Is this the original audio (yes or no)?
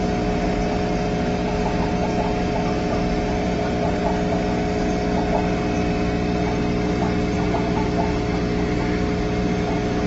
yes